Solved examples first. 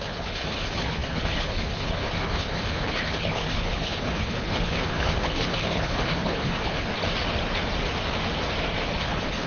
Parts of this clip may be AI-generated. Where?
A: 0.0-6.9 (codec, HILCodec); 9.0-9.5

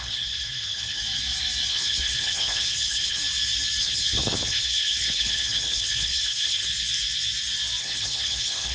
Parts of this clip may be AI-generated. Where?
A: 0.0-1.0 (codec, HILCodec); 1.7-3.2; 3.8-6.6; 7.8-8.7

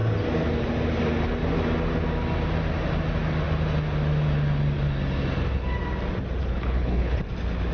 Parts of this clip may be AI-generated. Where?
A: 6.4-7.2 (codec, HILCodec)

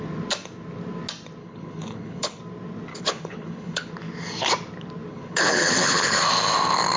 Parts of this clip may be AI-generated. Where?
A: 1.4-2.4 (codec, HILCodec); 2.9-3.9; 5.1-6.2